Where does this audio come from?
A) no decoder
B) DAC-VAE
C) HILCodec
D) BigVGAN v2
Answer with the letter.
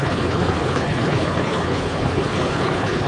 C